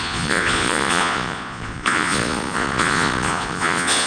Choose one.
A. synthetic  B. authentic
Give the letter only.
A